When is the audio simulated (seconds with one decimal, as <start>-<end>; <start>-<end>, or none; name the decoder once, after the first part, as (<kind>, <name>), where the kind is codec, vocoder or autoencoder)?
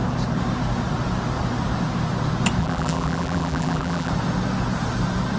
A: 2.6-4.1 (vocoder, BigVGAN v2)